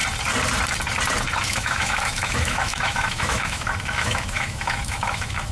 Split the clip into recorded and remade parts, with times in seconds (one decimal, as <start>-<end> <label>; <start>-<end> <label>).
0.0-1.4 recorded; 1.4-5.5 remade